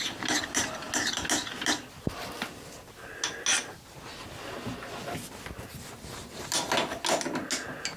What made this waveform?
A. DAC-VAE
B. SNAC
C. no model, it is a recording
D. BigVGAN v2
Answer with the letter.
C